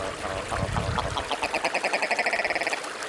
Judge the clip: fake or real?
real